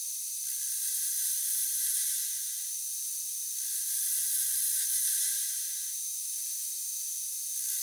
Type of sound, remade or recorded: recorded